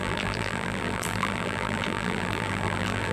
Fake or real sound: fake